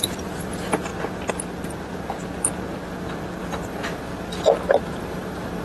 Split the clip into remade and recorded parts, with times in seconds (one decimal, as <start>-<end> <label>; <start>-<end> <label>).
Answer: 0.0-0.9 remade; 0.9-3.4 recorded; 3.4-4.1 remade; 4.1-5.0 recorded; 5.0-5.6 remade